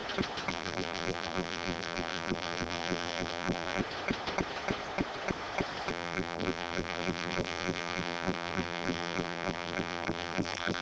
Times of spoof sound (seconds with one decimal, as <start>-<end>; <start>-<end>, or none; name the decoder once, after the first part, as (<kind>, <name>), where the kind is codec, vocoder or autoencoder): 0.5-3.8 (vocoder, BigVGAN v2); 5.9-10.8